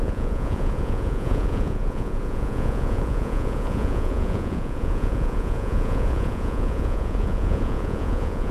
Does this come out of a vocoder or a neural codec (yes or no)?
yes